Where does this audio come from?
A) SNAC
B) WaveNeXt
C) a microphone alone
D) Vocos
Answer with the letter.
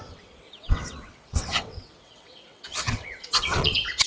B